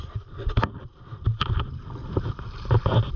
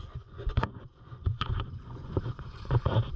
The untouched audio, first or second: first